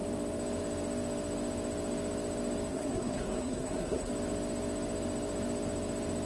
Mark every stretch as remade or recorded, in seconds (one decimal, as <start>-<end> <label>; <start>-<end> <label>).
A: 0.0-2.7 recorded; 2.7-4.1 remade; 4.1-6.3 recorded